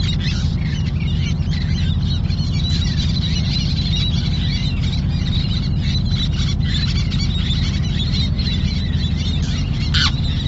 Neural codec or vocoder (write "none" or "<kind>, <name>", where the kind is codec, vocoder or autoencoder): none